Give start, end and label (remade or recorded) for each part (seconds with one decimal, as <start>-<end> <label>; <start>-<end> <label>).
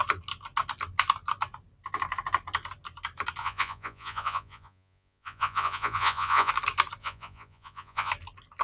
0.0-3.4 recorded; 3.4-6.5 remade; 6.5-7.0 recorded; 7.0-8.1 remade; 8.1-8.6 recorded